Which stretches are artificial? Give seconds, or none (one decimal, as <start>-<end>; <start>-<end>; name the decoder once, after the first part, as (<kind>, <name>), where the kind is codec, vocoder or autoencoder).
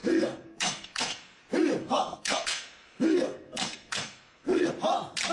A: 0.0-1.4 (codec, SNAC); 1.8-4.7